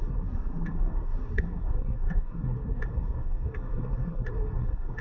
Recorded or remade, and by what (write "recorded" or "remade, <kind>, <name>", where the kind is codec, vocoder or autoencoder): remade, codec, SNAC